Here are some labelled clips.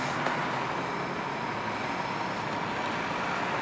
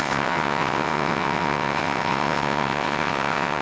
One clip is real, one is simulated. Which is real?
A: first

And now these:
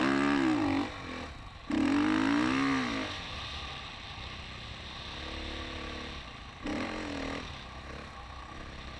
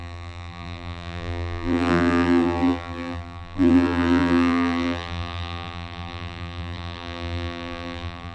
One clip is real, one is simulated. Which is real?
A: first